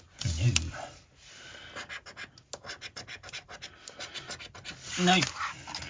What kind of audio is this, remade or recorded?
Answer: recorded